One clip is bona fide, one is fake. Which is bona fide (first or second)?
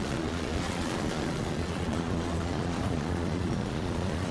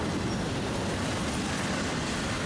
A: second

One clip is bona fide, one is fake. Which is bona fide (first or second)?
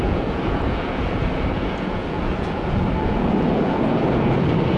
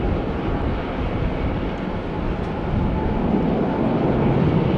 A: second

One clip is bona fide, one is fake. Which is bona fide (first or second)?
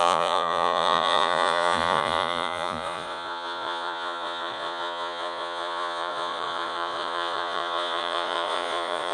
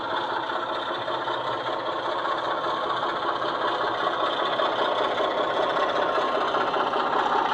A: second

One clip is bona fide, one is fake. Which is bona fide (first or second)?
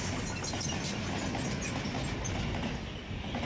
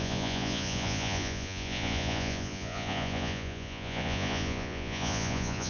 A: first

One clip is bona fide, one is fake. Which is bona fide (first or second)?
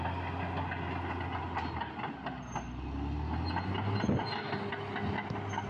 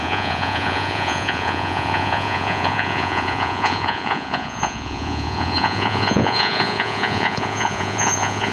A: first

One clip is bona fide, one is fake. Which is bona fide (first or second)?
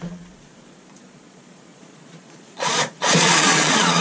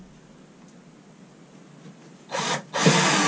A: second